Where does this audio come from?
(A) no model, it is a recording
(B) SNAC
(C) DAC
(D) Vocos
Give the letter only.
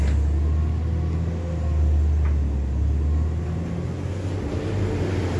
A